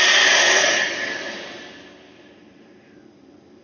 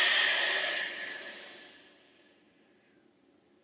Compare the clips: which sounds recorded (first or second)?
first